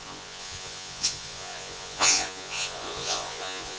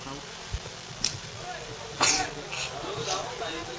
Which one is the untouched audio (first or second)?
second